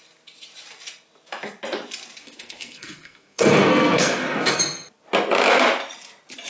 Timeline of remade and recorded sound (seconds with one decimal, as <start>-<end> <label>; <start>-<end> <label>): 0.0-2.2 recorded; 2.2-4.6 remade; 4.6-6.5 recorded